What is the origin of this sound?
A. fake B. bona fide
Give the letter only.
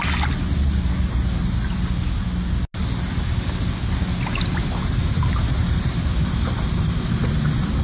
B